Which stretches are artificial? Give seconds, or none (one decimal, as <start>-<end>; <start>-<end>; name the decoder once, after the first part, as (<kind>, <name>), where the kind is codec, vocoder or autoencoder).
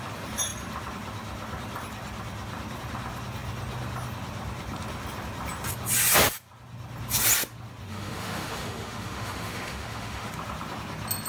7.9-10.3 (autoencoder, DAC-VAE)